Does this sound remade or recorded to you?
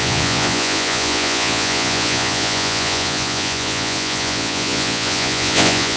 remade